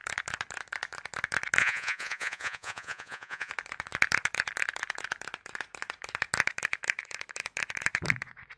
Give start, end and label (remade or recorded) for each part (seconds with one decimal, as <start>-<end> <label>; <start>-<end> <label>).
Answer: 0.0-1.6 recorded; 1.6-3.5 remade; 3.5-8.6 recorded